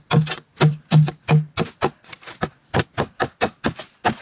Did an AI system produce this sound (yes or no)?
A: no